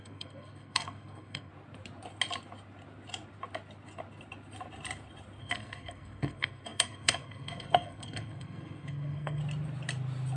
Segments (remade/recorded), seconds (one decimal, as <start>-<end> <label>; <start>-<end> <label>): 0.0-1.5 remade; 1.5-5.4 recorded; 5.4-9.4 remade; 9.4-10.4 recorded